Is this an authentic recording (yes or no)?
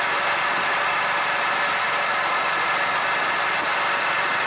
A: yes